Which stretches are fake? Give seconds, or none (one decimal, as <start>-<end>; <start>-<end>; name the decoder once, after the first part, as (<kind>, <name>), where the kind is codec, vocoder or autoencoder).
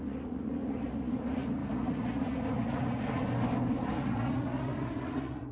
0.0-3.2 (vocoder, Vocos); 3.8-5.5